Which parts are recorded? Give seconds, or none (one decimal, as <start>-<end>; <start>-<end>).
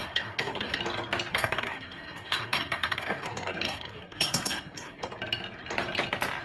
0.8-1.3; 5.1-6.4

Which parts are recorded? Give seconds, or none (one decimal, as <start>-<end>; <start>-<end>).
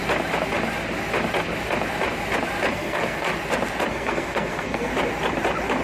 0.0-2.7; 3.3-3.9; 4.9-5.8